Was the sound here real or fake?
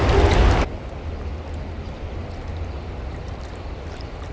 real